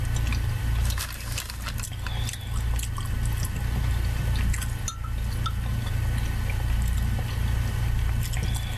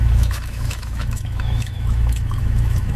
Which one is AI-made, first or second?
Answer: second